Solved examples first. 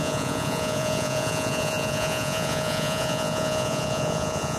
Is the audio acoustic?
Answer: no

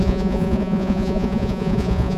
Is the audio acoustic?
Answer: no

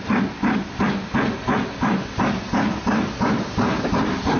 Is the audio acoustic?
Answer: yes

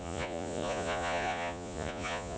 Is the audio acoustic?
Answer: no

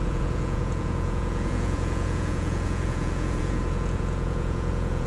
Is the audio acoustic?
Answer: no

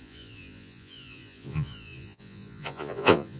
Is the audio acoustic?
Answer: no